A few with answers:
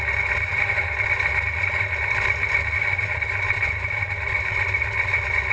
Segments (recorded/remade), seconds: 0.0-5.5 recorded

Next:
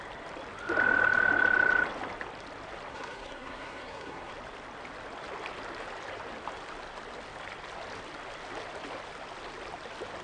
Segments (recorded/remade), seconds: 0.0-2.9 recorded; 2.9-4.3 remade; 4.3-10.2 recorded

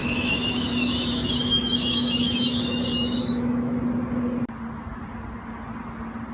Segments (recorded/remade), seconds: 0.0-3.8 remade; 3.8-6.3 recorded

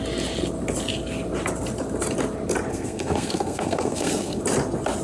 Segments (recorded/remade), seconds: 0.0-2.7 recorded; 2.7-4.4 remade; 4.4-5.0 recorded

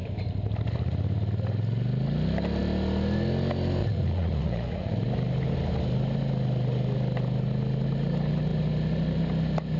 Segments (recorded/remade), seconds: 0.0-3.8 recorded; 3.8-4.9 remade; 4.9-9.8 recorded

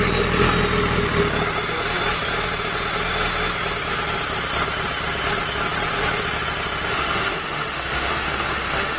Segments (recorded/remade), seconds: 0.0-6.9 recorded; 6.9-9.0 remade

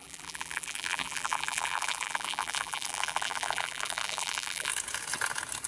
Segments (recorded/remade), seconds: 0.0-4.7 remade; 4.7-5.7 recorded

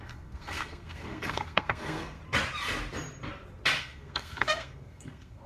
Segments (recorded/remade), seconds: 0.0-2.2 remade; 2.2-3.8 recorded; 3.8-5.5 remade